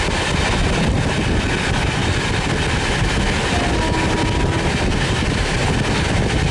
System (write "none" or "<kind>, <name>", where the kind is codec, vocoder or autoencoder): none